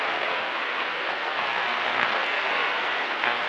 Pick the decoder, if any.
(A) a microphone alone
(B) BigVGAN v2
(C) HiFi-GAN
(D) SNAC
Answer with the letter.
D